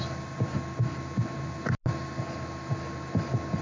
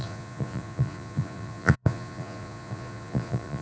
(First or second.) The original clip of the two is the first